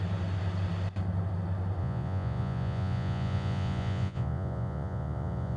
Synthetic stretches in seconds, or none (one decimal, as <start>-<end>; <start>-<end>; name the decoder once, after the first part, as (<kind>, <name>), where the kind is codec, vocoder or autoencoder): 1.8-5.6 (vocoder, Vocos)